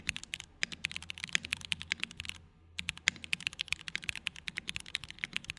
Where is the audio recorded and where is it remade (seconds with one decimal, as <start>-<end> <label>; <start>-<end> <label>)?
0.0-5.6 recorded